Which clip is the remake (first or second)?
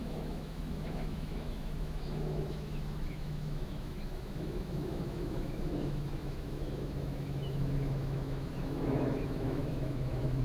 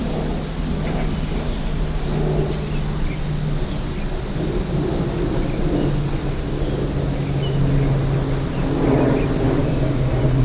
first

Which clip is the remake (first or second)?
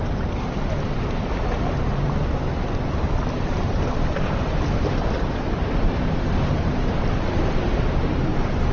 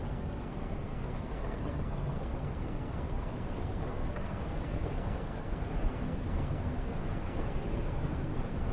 second